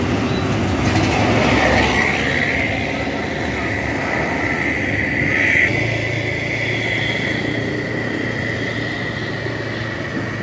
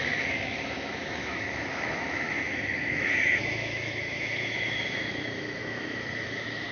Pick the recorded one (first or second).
first